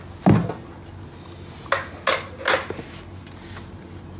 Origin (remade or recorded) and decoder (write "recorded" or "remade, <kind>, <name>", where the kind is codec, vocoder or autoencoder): recorded